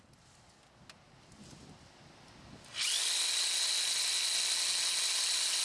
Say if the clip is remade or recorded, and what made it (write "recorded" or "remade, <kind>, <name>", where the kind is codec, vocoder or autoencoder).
recorded